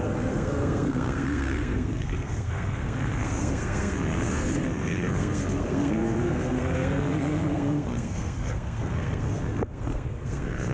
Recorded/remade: remade